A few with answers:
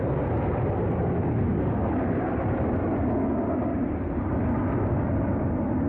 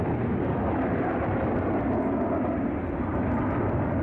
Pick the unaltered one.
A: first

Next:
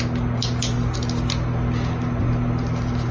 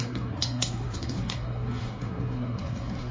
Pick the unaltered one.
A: first